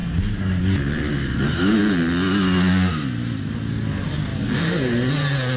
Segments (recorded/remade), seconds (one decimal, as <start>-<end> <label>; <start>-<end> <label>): 0.0-5.6 recorded